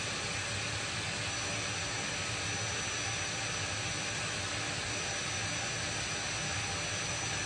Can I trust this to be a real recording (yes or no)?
yes